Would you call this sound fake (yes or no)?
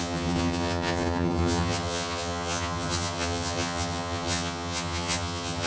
yes